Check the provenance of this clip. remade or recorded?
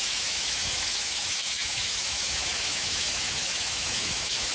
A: remade